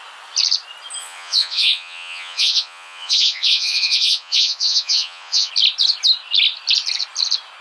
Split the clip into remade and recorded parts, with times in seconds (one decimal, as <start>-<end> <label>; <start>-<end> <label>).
0.0-1.0 recorded; 1.0-5.5 remade; 5.5-7.6 recorded

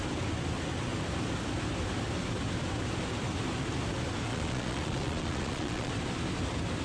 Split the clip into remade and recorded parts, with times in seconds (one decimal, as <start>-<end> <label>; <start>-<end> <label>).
0.0-4.3 recorded; 4.3-5.9 remade; 5.9-6.8 recorded

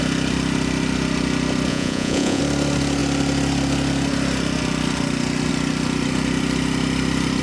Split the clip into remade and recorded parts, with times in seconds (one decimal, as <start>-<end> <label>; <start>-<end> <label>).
0.0-1.7 recorded; 1.7-2.4 remade; 2.4-7.4 recorded

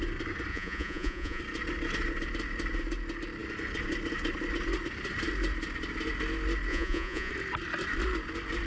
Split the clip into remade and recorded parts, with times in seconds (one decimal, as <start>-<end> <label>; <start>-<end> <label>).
0.0-0.5 recorded; 0.5-1.4 remade; 1.4-6.7 recorded; 6.7-7.3 remade; 7.3-8.7 recorded

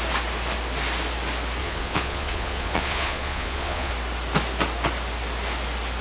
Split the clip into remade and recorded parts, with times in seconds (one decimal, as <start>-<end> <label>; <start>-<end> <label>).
0.0-1.6 recorded; 1.6-3.9 remade; 3.9-6.0 recorded